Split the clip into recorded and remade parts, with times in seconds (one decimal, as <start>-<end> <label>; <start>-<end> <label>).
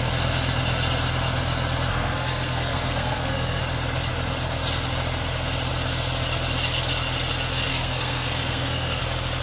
0.0-1.9 recorded; 1.9-3.6 remade; 3.6-7.7 recorded; 7.7-9.0 remade; 9.0-9.4 recorded